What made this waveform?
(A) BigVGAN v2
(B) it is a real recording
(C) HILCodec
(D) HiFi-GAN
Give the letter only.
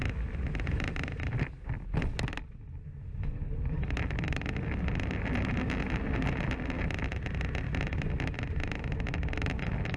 B